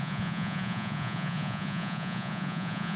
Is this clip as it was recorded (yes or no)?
no